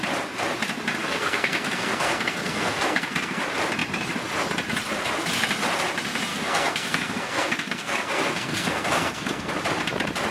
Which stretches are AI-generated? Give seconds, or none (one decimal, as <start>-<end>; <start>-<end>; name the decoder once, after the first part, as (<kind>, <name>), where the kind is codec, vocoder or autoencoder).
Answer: 1.0-3.4 (codec, SNAC); 6.3-9.5